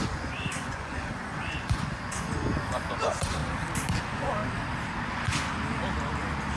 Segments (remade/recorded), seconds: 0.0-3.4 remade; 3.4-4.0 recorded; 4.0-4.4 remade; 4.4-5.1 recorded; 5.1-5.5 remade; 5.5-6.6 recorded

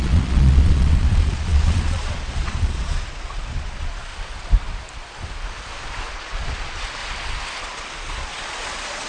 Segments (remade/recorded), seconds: 0.0-4.1 remade; 4.1-6.1 recorded; 6.1-7.0 remade; 7.0-7.6 recorded; 7.6-9.1 remade

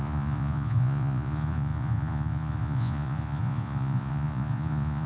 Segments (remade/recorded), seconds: 0.0-5.1 remade

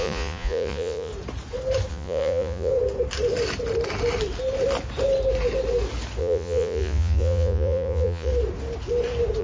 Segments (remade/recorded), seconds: 0.0-1.1 remade; 1.1-1.9 recorded; 1.9-2.7 remade; 2.7-6.2 recorded; 6.2-8.3 remade; 8.3-9.4 recorded

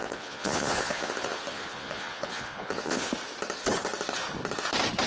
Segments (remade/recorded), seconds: 0.0-3.1 remade; 3.1-5.1 recorded

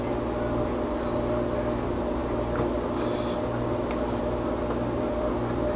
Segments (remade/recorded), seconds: 0.0-5.8 recorded

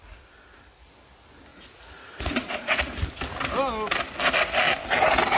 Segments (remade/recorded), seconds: 0.0-1.5 recorded; 1.5-3.0 remade; 3.0-5.4 recorded

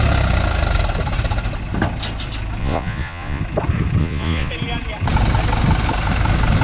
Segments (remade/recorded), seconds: 0.0-2.6 recorded; 2.6-3.4 remade; 3.4-4.0 recorded; 4.0-4.5 remade; 4.5-6.6 recorded